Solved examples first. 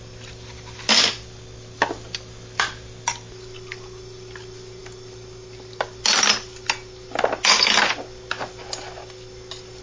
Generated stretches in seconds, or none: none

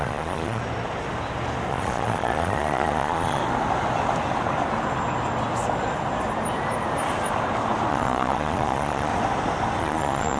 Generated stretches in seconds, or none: 0.0-0.6 (vocoder, Vocos); 1.7-3.4; 7.9-9.1; 9.8-10.4

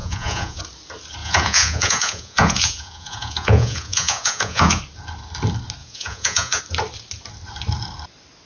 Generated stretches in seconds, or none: 0.0-0.6 (vocoder, Vocos); 1.2-4.8; 5.8-6.6

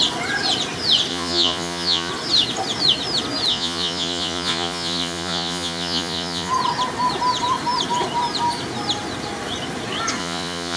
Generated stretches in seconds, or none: 1.1-2.1 (vocoder, Vocos); 3.5-6.5; 10.2-10.8

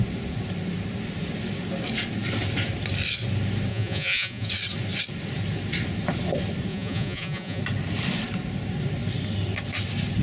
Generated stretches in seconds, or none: 3.7-4.5 (vocoder, Vocos); 6.7-7.6